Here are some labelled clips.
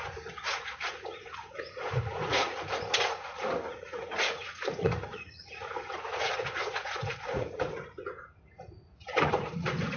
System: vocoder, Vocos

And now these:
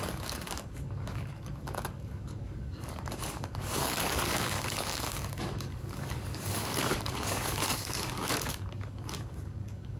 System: codec, DAC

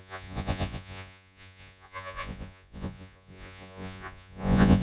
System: vocoder, Vocos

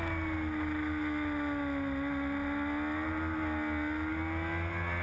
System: none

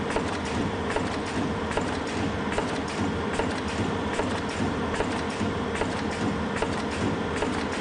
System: none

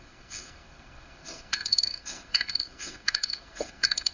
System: codec, SNAC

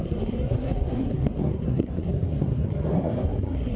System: codec, SNAC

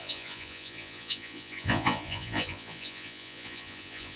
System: vocoder, Vocos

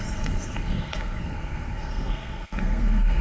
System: codec, SNAC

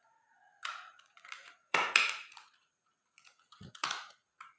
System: vocoder, Vocos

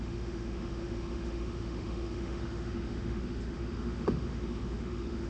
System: autoencoder, DAC-VAE